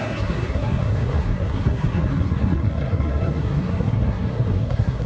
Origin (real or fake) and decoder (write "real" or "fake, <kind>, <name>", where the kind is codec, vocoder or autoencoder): fake, codec, SNAC